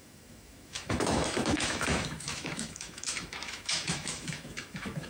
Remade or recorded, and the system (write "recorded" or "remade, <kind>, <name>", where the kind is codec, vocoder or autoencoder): remade, autoencoder, DAC-VAE